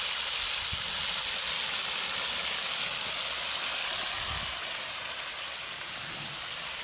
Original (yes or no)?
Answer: yes